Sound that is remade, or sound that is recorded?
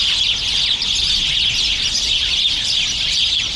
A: recorded